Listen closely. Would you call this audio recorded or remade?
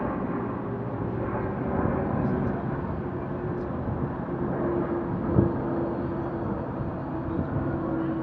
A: recorded